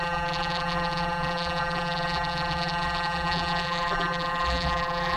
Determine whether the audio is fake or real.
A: fake